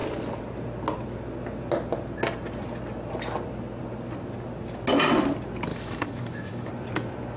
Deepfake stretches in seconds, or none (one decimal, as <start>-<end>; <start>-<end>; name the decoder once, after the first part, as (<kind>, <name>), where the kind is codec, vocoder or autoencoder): 5.7-6.7 (autoencoder, DAC-VAE)